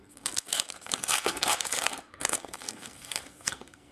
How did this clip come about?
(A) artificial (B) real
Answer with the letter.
A